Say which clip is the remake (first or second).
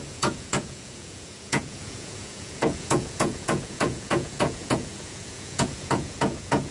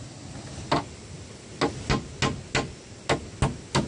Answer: first